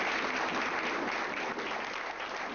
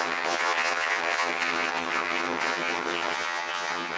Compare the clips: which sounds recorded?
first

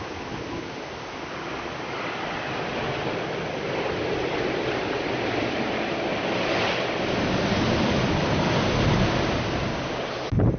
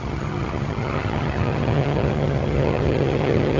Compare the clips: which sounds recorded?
first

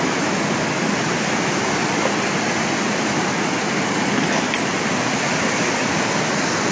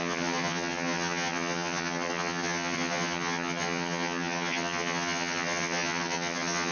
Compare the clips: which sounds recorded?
first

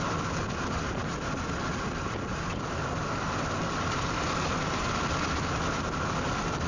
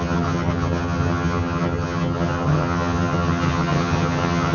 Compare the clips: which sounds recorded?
first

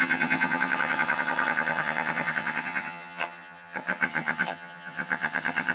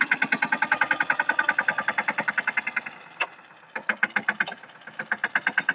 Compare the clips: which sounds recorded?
second